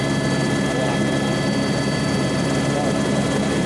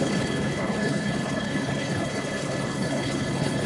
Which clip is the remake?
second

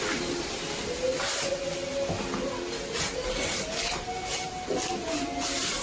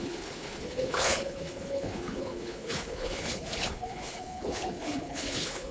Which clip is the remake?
second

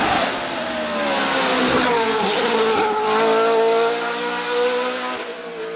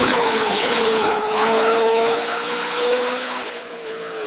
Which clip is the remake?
second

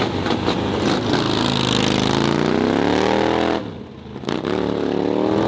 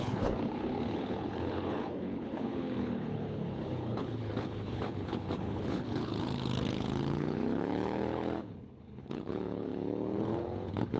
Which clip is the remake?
second